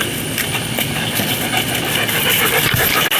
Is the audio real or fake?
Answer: real